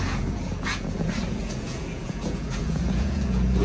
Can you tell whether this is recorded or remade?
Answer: remade